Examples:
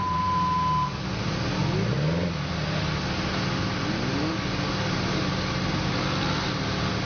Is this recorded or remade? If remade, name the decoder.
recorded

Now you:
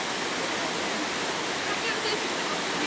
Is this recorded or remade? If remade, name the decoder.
recorded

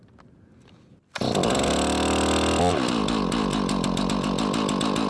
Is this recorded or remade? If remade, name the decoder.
recorded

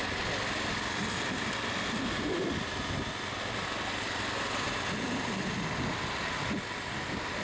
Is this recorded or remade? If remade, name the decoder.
recorded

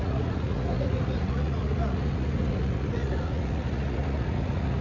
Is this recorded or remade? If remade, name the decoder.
remade, vocoder, Vocos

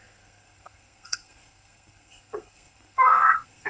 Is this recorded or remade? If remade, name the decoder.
remade, codec, SNAC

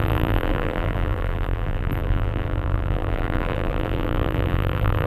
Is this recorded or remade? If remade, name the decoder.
remade, vocoder, BigVGAN v2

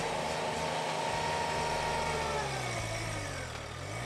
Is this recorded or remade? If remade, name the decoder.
recorded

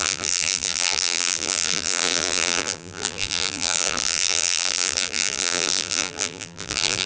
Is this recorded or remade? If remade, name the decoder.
remade, vocoder, BigVGAN v2